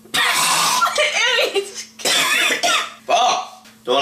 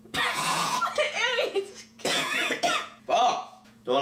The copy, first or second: second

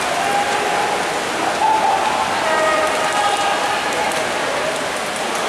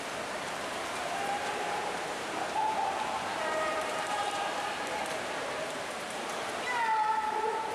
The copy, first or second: second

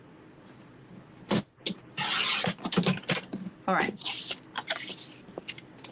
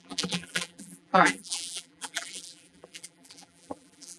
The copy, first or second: second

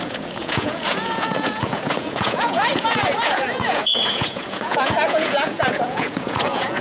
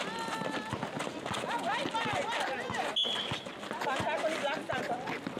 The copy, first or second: first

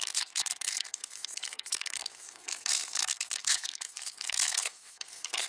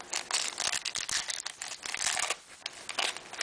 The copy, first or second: first